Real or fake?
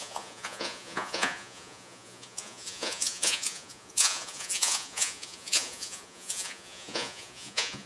fake